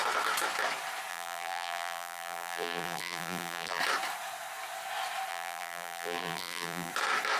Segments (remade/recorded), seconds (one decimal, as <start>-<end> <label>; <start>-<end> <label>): 0.0-1.1 recorded; 1.1-3.8 remade; 3.8-5.3 recorded; 5.3-6.9 remade; 6.9-7.4 recorded